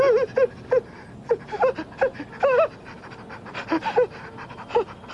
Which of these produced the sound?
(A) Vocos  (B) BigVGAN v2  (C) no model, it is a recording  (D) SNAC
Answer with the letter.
C